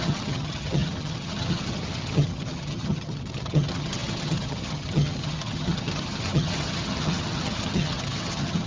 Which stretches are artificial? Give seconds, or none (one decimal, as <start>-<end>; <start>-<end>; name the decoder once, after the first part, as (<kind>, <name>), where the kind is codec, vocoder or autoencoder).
0.0-8.7 (vocoder, HiFi-GAN)

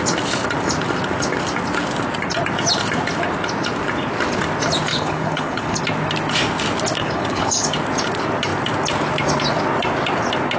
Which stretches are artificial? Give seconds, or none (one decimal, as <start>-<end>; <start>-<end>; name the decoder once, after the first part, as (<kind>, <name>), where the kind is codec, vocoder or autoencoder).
4.9-5.8 (codec, HILCodec); 7.0-7.7

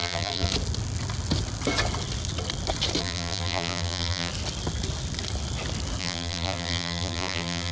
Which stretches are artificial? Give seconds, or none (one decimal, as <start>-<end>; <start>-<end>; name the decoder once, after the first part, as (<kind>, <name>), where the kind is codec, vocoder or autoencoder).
0.0-0.5 (vocoder, BigVGAN v2); 3.0-4.3; 6.0-7.7

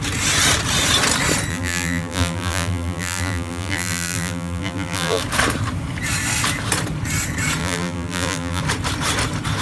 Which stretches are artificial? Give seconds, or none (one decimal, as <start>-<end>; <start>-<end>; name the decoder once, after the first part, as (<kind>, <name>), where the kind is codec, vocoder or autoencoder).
1.5-5.2 (vocoder, BigVGAN v2); 7.6-8.6

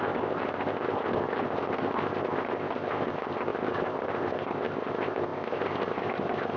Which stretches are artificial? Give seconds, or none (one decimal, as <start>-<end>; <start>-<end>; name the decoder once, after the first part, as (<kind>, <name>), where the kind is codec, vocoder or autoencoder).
0.0-6.6 (codec, ZipCodec)

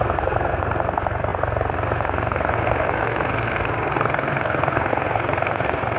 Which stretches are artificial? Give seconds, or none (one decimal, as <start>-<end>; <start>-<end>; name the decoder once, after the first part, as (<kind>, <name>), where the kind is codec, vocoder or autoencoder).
0.0-6.0 (codec, SNAC)

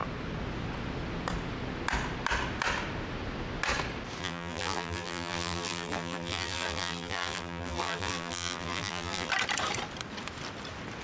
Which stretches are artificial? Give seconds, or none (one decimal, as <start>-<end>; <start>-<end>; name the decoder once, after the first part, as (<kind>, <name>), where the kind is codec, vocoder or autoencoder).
4.2-9.3 (vocoder, BigVGAN v2)